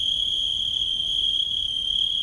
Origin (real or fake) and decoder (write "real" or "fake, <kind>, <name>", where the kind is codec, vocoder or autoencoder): fake, vocoder, BigVGAN v2